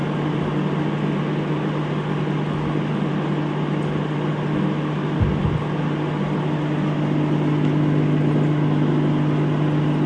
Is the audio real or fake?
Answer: real